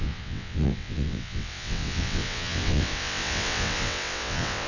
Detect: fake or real fake